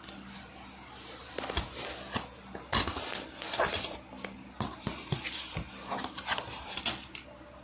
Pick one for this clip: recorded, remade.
recorded